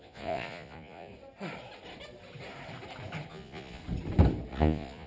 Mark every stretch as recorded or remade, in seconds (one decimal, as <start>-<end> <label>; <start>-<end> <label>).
0.0-1.1 remade; 1.1-3.3 recorded; 3.3-3.8 remade; 3.8-4.5 recorded; 4.5-5.1 remade